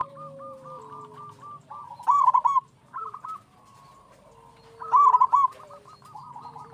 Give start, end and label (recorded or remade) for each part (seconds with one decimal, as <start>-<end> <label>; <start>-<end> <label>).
0.0-1.9 remade; 1.9-6.7 recorded

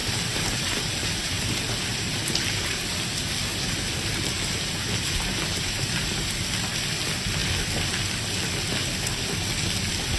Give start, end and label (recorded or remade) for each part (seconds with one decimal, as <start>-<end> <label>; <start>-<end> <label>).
0.0-2.9 remade; 2.9-3.5 recorded; 3.5-6.3 remade; 6.3-10.2 recorded